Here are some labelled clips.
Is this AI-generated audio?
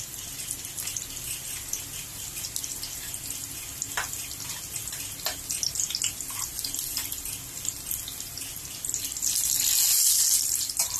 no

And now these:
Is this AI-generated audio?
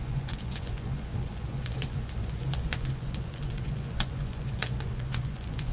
yes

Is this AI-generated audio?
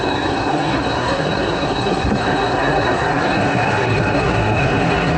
yes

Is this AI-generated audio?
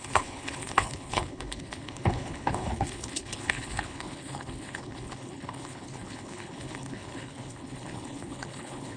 yes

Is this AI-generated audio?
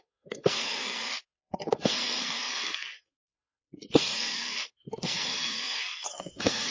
yes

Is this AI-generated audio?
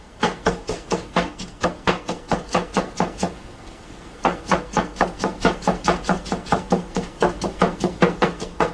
yes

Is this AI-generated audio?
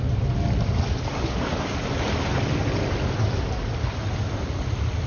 no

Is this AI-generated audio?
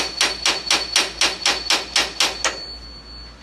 no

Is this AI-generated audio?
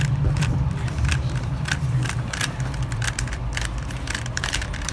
yes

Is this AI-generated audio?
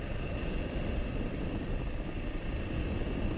no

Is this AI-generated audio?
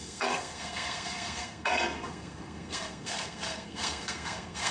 yes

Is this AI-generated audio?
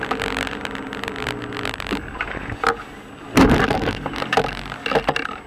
no